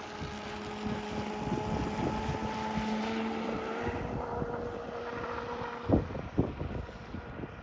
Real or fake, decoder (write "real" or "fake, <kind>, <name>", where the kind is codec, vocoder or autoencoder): real